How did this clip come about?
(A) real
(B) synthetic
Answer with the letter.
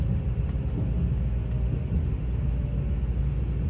A